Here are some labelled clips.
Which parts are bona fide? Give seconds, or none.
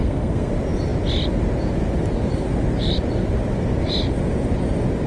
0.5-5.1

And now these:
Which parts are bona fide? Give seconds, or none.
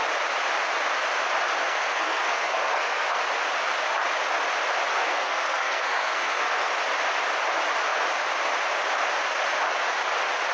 0.0-1.6; 3.2-4.9; 6.7-10.5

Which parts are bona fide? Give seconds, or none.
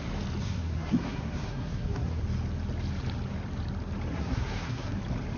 0.0-0.4; 2.2-4.1; 5.0-5.4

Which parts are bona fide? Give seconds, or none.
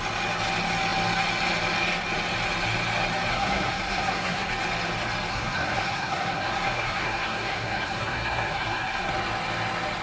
0.0-3.3; 4.5-5.3; 9.1-10.0